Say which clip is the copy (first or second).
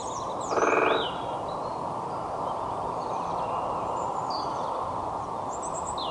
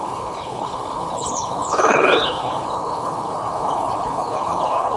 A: second